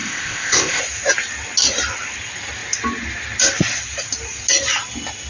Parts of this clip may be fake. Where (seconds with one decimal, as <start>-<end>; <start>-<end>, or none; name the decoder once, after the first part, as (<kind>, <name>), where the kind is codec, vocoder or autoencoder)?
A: 0.0-0.8 (codec, ZipCodec)